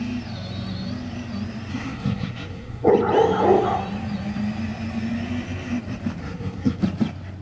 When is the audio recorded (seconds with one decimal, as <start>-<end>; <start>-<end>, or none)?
0.0-1.7; 2.9-6.2; 6.8-7.4